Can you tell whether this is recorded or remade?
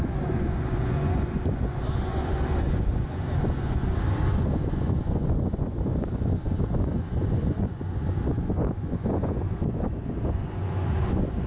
remade